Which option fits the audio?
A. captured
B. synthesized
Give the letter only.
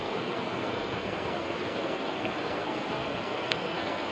B